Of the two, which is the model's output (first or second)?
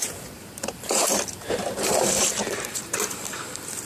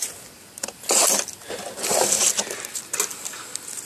first